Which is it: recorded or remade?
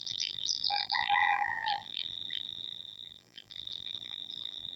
remade